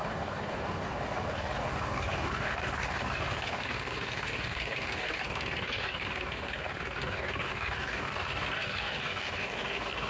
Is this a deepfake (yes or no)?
yes